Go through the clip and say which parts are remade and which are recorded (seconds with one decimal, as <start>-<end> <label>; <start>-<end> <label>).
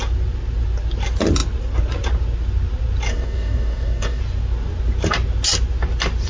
0.0-3.1 recorded; 3.1-4.2 remade; 4.2-6.3 recorded